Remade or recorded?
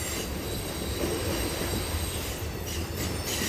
recorded